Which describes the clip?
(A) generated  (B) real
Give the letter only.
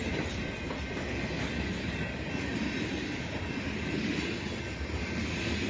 B